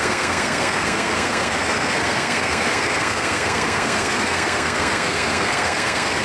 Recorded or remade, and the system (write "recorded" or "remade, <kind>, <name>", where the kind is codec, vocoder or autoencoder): remade, codec, SNAC